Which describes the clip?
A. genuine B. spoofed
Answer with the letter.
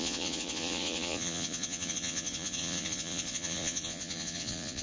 B